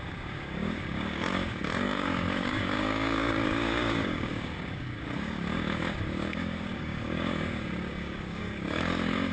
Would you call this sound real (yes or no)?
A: no